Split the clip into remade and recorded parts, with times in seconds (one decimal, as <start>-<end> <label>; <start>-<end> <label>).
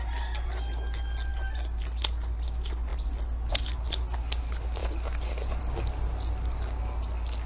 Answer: 0.0-7.5 recorded